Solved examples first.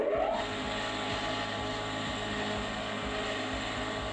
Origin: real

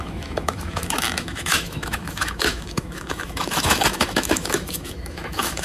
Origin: fake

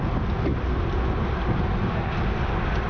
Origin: real